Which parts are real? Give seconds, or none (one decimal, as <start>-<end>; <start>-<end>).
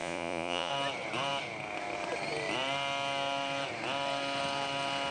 0.7-5.1